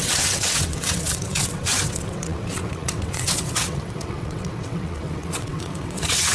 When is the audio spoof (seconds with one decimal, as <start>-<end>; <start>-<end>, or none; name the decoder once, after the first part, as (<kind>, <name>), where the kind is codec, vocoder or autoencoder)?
0.0-6.3 (vocoder, WaveNeXt)